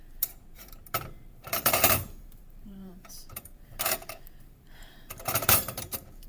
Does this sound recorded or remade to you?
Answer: remade